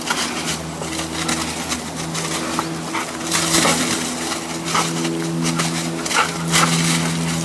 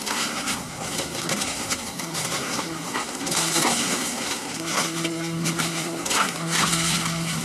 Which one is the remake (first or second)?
second